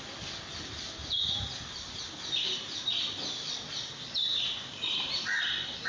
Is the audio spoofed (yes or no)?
yes